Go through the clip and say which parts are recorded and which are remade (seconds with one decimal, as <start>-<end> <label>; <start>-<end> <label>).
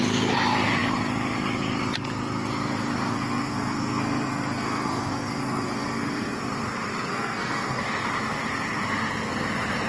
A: 0.0-3.1 recorded; 3.1-6.4 remade; 6.4-7.1 recorded; 7.1-7.8 remade; 7.8-9.9 recorded